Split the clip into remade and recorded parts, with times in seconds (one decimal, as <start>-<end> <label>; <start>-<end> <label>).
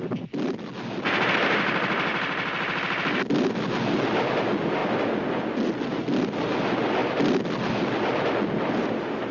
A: 0.0-9.3 recorded